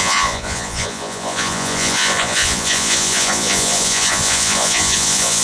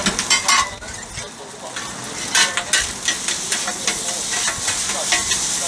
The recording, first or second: second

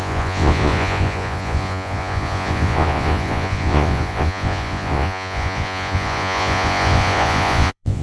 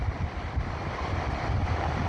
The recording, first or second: second